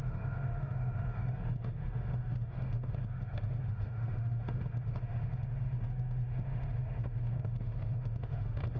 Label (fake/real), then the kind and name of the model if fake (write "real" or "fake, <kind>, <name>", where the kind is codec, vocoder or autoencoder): fake, autoencoder, DAC-VAE